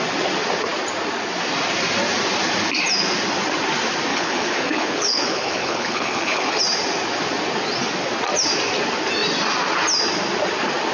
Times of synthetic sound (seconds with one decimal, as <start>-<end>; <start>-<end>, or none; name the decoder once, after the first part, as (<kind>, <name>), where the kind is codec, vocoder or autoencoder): 4.1-6.6 (codec, HILCodec)